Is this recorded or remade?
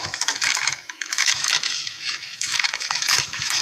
remade